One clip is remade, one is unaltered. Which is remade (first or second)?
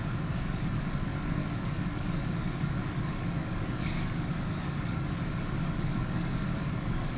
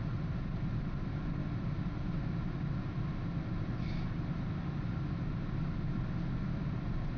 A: first